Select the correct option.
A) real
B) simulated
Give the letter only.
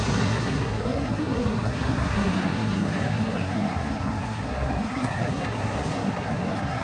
B